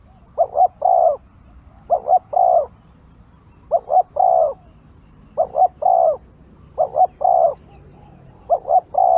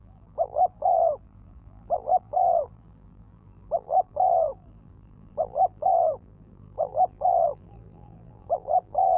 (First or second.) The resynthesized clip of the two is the second